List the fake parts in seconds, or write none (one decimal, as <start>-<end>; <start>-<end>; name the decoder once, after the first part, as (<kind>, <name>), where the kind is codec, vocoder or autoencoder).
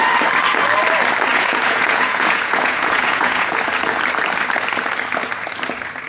1.3-3.6 (vocoder, Vocos)